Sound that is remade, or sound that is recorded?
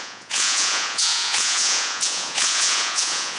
remade